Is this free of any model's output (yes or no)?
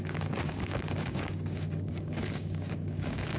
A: no